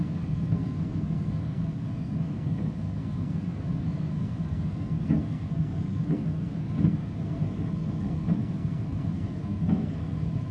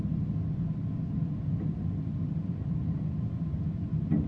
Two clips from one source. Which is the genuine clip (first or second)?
second